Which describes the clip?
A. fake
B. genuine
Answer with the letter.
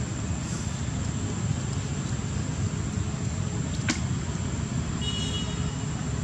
B